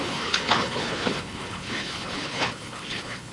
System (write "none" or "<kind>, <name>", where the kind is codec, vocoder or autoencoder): codec, HILCodec